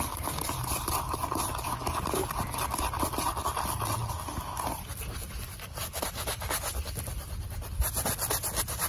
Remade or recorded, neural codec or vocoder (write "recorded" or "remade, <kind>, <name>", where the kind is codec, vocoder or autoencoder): recorded